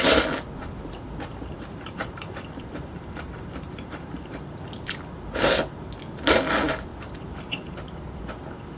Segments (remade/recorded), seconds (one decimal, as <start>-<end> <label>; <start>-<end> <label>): 0.0-0.6 recorded; 0.6-4.6 remade; 4.6-6.9 recorded; 6.9-8.2 remade; 8.2-8.8 recorded